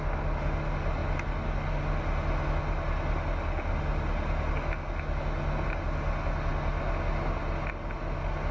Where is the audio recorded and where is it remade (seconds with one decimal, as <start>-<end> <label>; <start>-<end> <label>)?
0.0-8.5 recorded